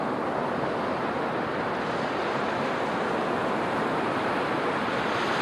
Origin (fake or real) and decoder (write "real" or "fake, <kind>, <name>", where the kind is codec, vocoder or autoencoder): real